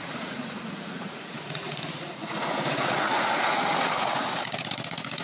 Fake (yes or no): yes